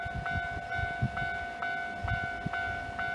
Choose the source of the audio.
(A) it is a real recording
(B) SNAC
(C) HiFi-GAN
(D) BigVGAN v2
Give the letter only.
A